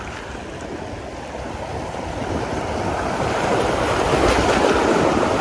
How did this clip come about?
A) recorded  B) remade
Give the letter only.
A